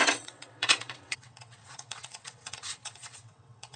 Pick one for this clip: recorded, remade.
remade